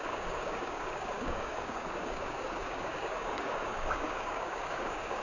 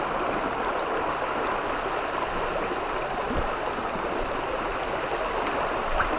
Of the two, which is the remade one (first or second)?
first